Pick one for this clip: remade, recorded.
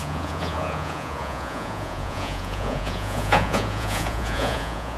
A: remade